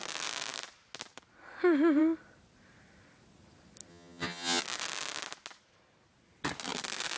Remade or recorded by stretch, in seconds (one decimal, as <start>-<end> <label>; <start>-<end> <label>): 0.0-3.9 recorded; 3.9-4.6 remade; 4.6-7.2 recorded